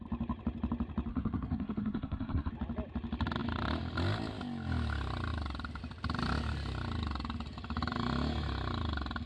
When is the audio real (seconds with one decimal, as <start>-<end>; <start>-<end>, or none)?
0.0-1.1; 2.5-9.3

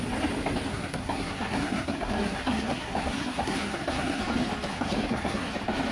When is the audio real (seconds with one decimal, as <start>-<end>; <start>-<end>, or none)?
0.0-0.7; 4.2-4.7; 5.5-5.9